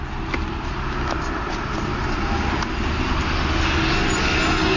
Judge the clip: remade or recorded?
recorded